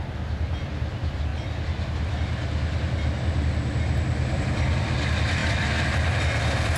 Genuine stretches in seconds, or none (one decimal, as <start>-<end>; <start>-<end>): 1.3-4.3